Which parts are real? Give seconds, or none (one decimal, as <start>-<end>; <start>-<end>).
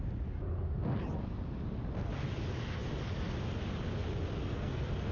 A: 0.0-4.4